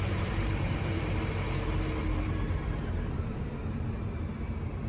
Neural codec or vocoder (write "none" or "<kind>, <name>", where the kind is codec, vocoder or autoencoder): vocoder, BigVGAN v2